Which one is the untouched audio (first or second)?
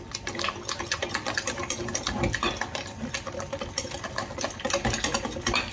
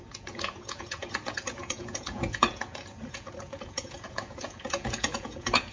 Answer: first